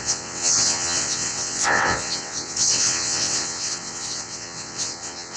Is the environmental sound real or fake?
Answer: fake